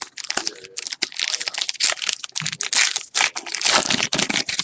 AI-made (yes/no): no